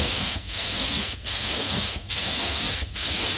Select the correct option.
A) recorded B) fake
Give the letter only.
B